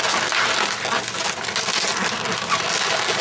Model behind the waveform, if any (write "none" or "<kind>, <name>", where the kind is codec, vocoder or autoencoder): none